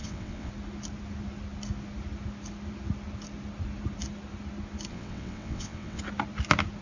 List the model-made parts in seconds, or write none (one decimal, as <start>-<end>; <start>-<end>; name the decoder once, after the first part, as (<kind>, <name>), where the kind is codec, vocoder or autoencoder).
0.0-0.5 (vocoder, WaveNeXt); 4.9-6.0